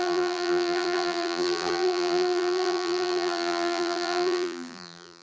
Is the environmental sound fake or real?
fake